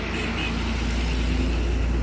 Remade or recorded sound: recorded